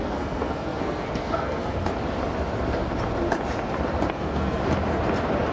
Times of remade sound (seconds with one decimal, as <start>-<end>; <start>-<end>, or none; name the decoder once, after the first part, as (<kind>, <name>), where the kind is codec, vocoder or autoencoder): 0.0-1.9 (codec, SNAC); 4.1-4.6

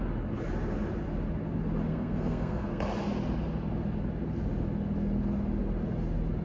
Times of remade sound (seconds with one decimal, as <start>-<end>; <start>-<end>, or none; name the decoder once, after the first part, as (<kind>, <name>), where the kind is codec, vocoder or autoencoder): 1.9-2.8 (codec, SNAC)